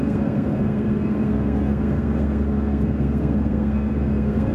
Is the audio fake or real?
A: fake